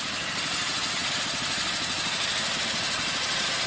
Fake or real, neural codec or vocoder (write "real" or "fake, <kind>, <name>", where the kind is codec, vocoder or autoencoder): real